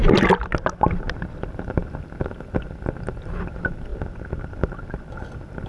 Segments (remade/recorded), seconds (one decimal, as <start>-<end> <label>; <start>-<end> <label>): 0.0-3.9 recorded; 3.9-5.3 remade; 5.3-5.7 recorded